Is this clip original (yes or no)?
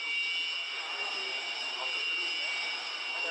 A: yes